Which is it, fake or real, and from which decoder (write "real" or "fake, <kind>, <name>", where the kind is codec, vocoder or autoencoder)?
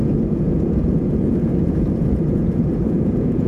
fake, vocoder, Vocos